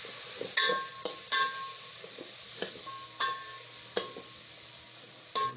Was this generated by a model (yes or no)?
no